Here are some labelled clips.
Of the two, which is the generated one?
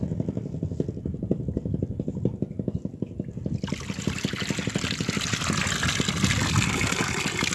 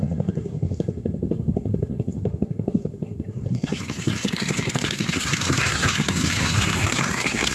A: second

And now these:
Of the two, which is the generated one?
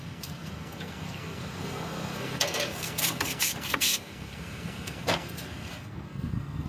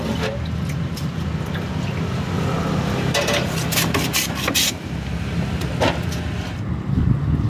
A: first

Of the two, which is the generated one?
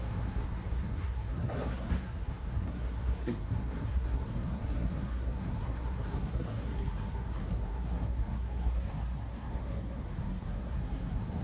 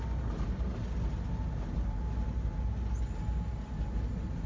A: first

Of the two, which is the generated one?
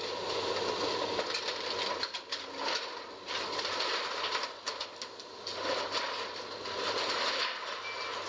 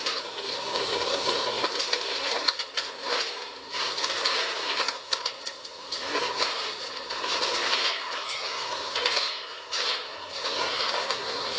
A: second